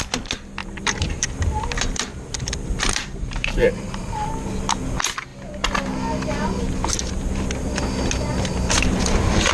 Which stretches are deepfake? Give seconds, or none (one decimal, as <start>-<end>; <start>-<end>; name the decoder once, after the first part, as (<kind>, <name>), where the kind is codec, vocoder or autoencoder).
0.6-4.2 (vocoder, BigVGAN v2)